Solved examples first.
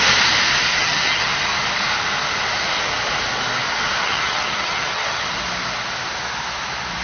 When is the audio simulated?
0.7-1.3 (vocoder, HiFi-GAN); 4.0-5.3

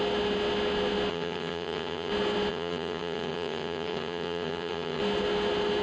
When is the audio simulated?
1.1-2.1 (vocoder, HiFi-GAN); 2.5-5.0

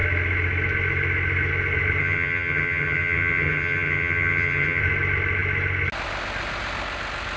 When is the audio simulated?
2.0-4.8 (vocoder, HiFi-GAN)

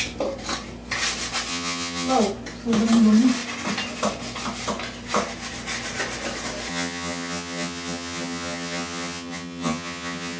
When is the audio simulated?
1.5-2.1 (vocoder, HiFi-GAN); 6.7-10.4

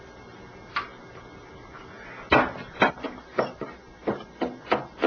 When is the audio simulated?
none

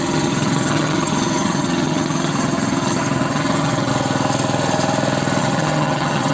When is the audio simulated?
0.0-3.9 (vocoder, HiFi-GAN); 5.4-6.3

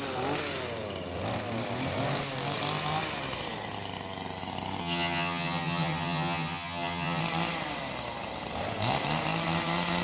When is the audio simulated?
4.8-7.2 (vocoder, HiFi-GAN)